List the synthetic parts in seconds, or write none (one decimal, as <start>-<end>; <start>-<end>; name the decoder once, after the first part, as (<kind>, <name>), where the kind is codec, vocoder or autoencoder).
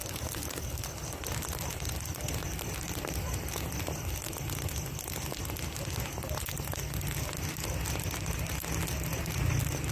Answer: none